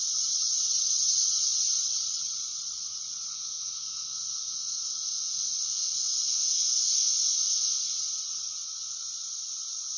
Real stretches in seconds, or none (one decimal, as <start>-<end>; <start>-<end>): 0.0-3.3; 7.8-10.0